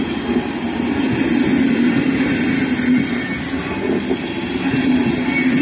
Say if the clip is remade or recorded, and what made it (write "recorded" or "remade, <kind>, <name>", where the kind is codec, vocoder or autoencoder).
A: recorded